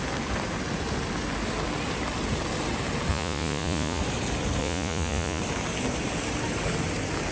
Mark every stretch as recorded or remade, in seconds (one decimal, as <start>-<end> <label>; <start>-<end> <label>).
0.0-3.1 recorded; 3.1-4.0 remade; 4.0-4.6 recorded; 4.6-5.4 remade; 5.4-7.3 recorded